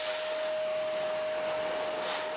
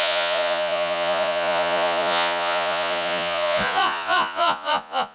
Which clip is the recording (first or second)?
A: first